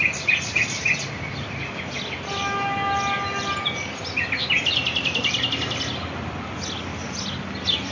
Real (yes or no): yes